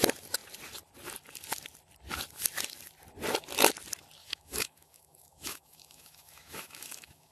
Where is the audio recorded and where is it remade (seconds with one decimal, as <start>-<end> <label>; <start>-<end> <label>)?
0.0-4.2 recorded; 4.2-7.3 remade